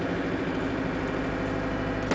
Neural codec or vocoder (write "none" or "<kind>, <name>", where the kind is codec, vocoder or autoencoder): none